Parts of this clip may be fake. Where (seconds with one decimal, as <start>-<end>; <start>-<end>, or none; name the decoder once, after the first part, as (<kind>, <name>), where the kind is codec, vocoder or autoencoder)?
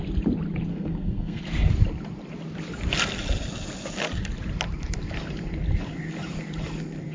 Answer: 0.7-1.4 (codec, SNAC)